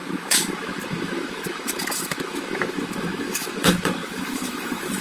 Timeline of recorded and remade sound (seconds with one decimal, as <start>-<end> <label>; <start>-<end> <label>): 0.0-5.0 remade